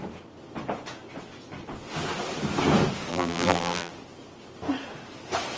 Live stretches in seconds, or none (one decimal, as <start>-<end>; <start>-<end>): 0.0-3.1; 3.9-5.6